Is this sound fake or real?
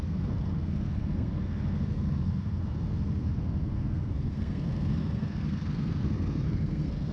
fake